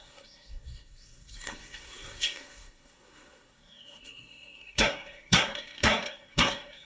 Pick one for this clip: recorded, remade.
remade